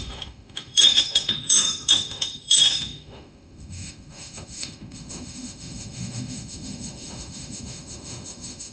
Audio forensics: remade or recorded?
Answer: remade